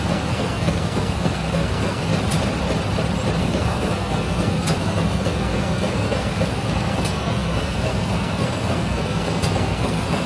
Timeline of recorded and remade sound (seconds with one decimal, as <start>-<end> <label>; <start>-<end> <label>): 0.0-2.1 remade; 2.1-3.4 recorded; 3.4-10.3 remade